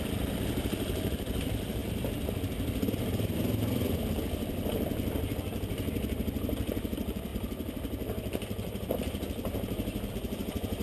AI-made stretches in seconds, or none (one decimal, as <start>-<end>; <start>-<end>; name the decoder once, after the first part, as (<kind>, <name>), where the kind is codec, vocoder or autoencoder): 0.0-10.8 (vocoder, BigVGAN v2)

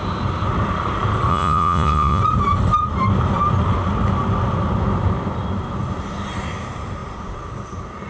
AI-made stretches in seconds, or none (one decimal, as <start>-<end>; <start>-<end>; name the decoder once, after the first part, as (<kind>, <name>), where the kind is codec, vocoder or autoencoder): 1.3-2.2 (vocoder, Vocos)

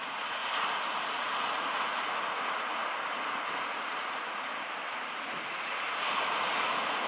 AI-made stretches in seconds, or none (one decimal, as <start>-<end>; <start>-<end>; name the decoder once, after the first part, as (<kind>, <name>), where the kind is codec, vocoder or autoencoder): 0.0-0.4 (vocoder, Vocos); 1.1-2.8; 3.9-4.5; 5.1-7.1

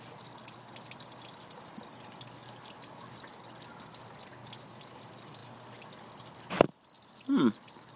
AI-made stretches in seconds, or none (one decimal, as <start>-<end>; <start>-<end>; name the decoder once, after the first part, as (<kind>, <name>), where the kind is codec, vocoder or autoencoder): none

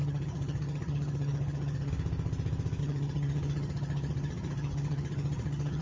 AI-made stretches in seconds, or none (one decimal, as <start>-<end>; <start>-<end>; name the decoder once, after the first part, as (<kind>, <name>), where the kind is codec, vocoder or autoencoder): 0.0-1.9 (vocoder, HiFi-GAN); 2.8-5.8

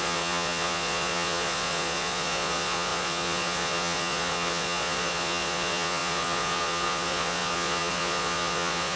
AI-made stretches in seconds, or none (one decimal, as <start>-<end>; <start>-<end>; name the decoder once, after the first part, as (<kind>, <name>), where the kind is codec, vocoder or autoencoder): 0.0-9.0 (vocoder, Vocos)

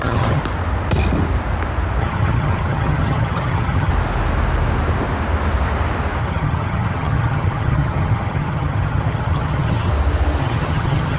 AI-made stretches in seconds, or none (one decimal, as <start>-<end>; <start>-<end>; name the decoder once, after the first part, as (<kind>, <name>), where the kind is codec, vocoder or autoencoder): 0.0-0.4 (vocoder, HiFi-GAN); 2.0-3.9; 6.2-9.9; 10.4-11.2

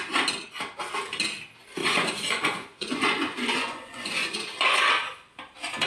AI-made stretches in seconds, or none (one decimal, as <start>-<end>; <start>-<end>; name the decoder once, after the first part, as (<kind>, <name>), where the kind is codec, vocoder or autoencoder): 1.8-4.9 (vocoder, Vocos)